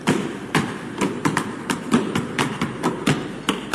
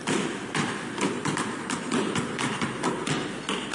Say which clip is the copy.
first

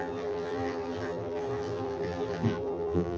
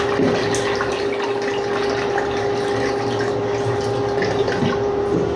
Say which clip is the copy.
first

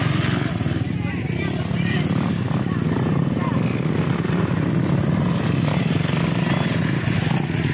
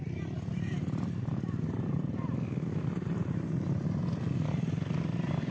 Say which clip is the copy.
second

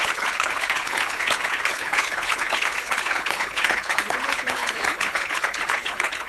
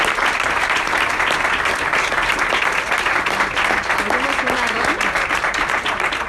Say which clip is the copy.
first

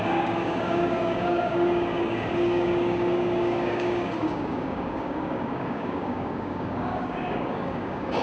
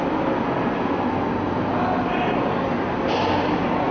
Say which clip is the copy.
first